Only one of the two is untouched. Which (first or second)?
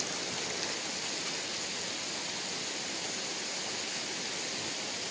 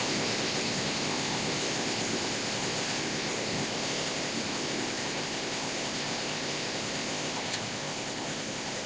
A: first